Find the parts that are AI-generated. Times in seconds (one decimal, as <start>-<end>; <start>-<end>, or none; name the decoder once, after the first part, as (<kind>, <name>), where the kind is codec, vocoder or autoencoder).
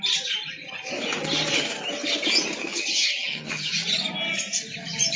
2.6-3.7 (vocoder, HiFi-GAN)